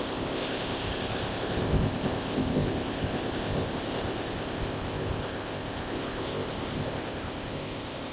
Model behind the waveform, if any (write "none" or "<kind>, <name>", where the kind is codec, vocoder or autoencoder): codec, ZipCodec